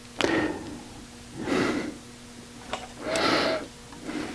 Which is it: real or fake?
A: real